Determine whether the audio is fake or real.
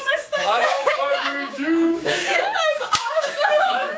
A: fake